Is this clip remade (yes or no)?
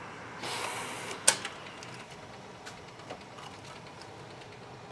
no